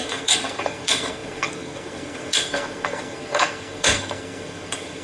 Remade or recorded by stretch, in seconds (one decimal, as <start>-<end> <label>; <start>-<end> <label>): 0.0-5.0 remade